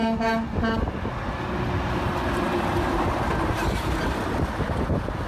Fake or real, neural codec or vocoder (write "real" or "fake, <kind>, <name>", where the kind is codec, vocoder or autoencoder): real